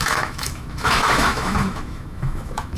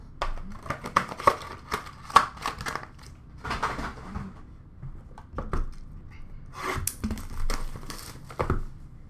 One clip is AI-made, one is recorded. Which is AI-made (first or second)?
first